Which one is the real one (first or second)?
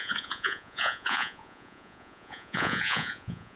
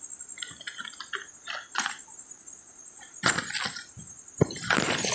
second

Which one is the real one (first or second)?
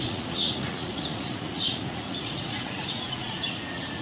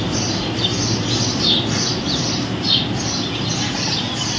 second